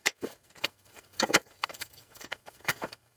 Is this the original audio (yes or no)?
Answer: no